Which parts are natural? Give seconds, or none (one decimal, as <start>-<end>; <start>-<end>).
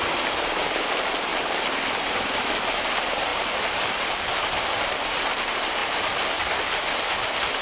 none